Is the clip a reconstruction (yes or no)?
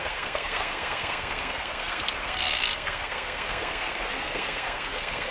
yes